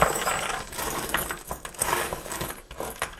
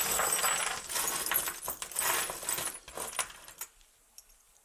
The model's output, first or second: first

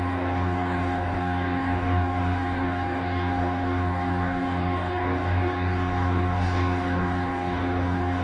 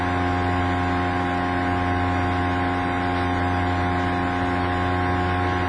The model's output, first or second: first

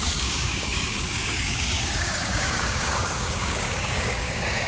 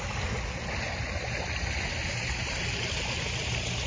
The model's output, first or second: first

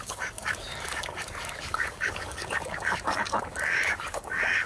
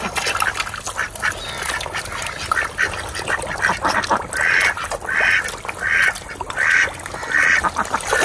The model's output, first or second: first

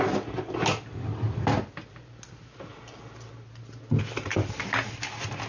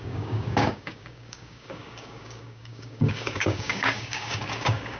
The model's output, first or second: second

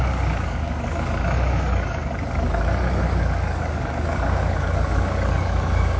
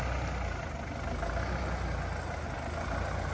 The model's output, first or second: first